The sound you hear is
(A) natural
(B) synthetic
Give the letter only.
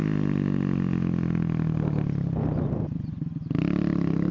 A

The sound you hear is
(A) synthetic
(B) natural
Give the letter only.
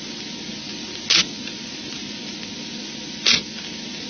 B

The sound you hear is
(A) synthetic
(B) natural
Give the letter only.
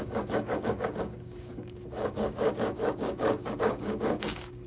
A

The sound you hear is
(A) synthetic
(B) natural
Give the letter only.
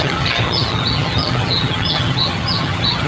A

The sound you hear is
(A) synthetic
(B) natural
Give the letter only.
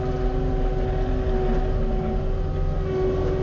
B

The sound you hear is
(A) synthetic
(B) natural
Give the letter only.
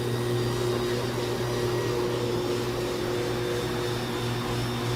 B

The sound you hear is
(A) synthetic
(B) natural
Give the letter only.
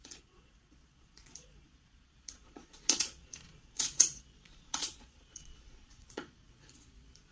A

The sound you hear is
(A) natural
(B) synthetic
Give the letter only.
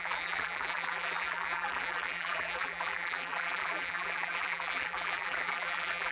B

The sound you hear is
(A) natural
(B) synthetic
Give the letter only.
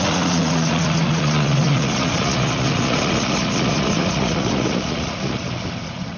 B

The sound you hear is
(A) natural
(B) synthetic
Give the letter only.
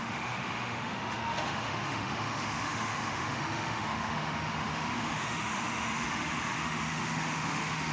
B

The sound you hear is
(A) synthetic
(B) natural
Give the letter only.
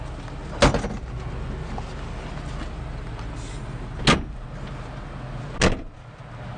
B